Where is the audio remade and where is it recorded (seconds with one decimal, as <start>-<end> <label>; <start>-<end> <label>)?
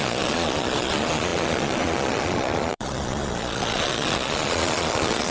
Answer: 0.0-5.3 remade